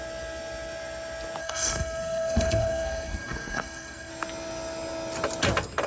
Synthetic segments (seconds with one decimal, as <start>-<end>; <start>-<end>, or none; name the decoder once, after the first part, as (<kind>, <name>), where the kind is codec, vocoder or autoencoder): 1.4-4.1 (codec, SNAC)